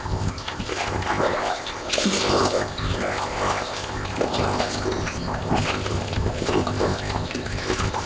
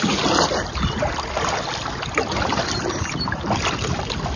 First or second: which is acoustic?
second